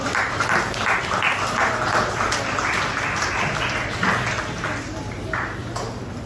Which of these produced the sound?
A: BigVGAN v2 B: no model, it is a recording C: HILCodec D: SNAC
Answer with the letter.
B